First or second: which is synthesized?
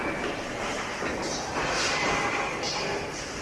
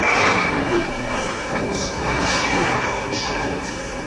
second